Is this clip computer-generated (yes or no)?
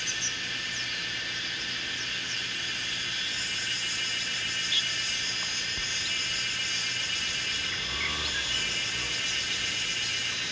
no